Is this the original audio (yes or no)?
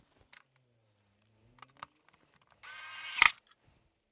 yes